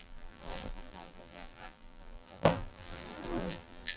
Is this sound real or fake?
fake